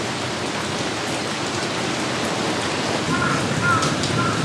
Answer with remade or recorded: recorded